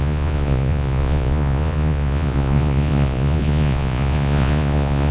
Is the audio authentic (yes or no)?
no